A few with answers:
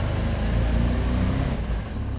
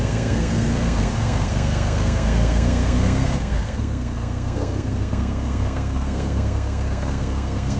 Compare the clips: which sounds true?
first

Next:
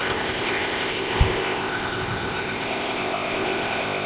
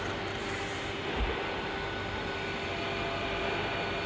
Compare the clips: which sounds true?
second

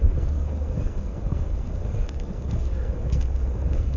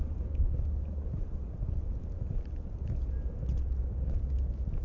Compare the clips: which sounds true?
second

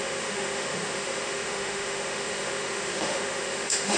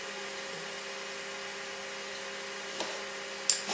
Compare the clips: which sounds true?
second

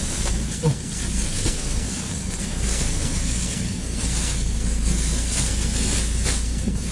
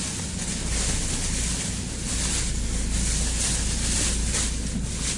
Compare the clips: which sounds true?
second